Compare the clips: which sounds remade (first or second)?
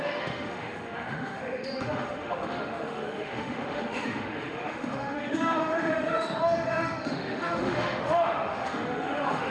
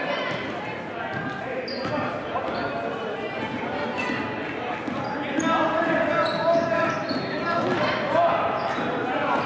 first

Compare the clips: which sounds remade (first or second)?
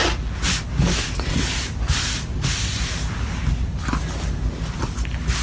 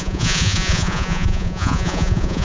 second